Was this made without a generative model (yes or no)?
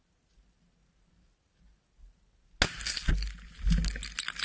yes